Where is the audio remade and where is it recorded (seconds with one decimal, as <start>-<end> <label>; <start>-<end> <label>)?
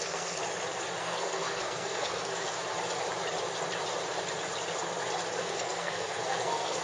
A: 0.0-0.4 remade; 0.4-1.0 recorded; 1.0-2.6 remade; 2.6-5.4 recorded; 5.4-6.8 remade